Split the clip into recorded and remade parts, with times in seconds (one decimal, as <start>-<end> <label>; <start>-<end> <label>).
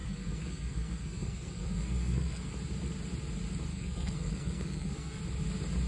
0.0-2.5 remade; 2.5-3.7 recorded; 3.7-5.2 remade; 5.2-5.9 recorded